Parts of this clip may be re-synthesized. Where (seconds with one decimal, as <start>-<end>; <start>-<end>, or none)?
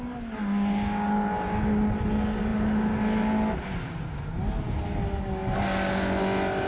none